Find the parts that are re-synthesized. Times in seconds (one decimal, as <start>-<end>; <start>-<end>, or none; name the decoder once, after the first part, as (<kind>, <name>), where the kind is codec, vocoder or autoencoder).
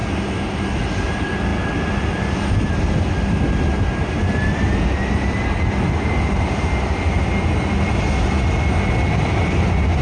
none